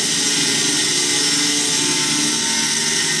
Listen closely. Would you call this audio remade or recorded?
recorded